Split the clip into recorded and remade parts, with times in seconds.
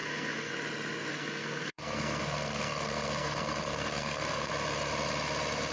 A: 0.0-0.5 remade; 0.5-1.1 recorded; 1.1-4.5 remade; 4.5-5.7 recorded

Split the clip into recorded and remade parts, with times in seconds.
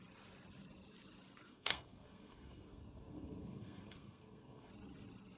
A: 0.0-1.5 recorded; 1.5-4.7 remade; 4.7-5.4 recorded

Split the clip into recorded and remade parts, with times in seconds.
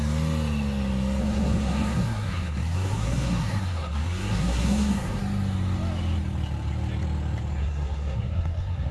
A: 0.0-1.2 recorded; 1.2-5.2 remade; 5.2-7.6 recorded; 7.6-8.9 remade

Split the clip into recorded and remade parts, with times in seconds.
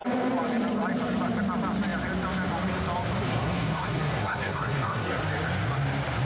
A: 0.0-3.3 recorded; 3.3-5.2 remade; 5.2-6.2 recorded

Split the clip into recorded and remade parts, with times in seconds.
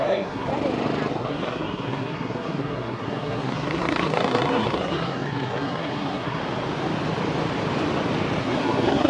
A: 0.0-0.5 remade; 0.5-1.1 recorded; 1.1-6.4 remade; 6.4-8.4 recorded; 8.4-9.1 remade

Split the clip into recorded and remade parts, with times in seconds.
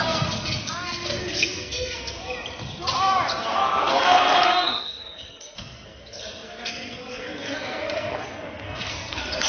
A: 0.0-2.2 remade; 2.2-3.4 recorded; 3.4-9.5 remade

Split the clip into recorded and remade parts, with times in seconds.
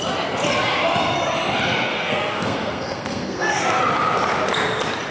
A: 0.0-1.9 recorded; 1.9-3.8 remade; 3.8-5.1 recorded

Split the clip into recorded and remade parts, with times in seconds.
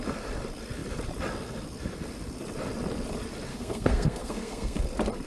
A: 0.0-3.5 recorded; 3.5-4.8 remade; 4.8-5.3 recorded